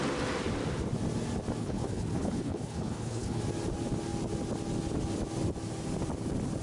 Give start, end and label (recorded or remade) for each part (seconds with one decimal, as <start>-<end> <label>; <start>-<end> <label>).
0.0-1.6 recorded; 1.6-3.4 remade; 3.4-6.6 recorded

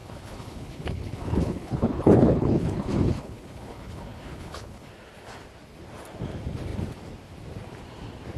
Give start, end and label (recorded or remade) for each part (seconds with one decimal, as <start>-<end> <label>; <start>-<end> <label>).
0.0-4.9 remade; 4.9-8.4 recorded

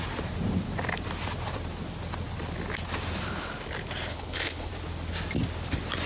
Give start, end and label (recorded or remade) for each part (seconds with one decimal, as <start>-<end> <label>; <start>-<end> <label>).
0.0-4.1 recorded; 4.1-4.7 remade; 4.7-6.1 recorded

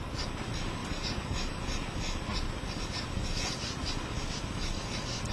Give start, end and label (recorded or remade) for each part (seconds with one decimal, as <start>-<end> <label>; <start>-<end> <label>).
0.0-5.3 recorded

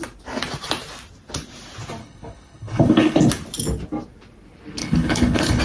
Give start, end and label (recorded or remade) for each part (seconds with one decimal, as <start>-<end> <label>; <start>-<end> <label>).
0.0-2.0 recorded; 2.0-3.3 remade; 3.3-4.8 recorded; 4.8-5.6 remade